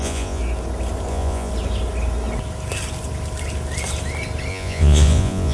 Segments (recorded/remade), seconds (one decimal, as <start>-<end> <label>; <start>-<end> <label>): 0.0-0.4 remade; 0.4-1.1 recorded; 1.1-1.5 remade; 1.5-4.5 recorded; 4.5-5.5 remade